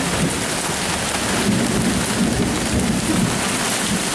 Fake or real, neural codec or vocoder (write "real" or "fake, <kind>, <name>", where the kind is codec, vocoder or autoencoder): real